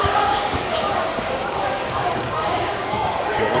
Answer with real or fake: fake